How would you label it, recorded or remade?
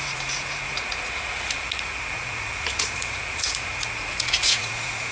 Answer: remade